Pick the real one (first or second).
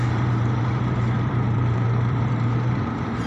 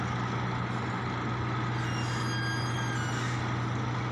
second